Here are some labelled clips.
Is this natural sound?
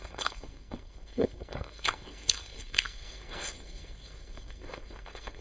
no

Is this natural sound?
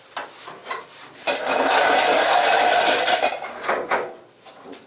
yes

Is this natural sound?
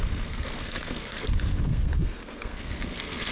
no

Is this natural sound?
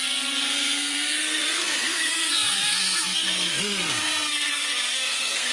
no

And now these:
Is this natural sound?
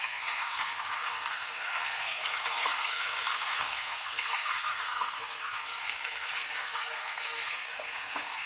no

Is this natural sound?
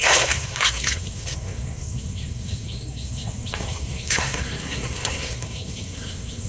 no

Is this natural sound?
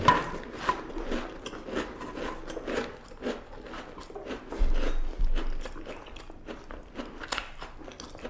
yes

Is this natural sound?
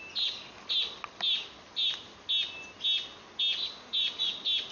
yes